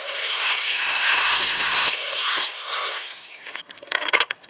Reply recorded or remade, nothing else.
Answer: remade